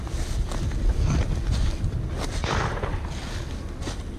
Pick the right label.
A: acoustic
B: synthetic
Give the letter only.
A